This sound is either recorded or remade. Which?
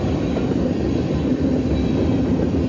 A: recorded